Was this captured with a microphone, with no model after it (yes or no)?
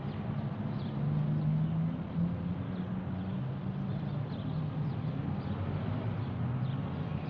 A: yes